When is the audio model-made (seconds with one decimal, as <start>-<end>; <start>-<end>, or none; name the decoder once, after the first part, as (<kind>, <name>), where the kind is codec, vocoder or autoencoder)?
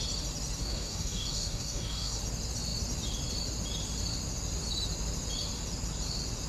0.6-2.2 (codec, DAC)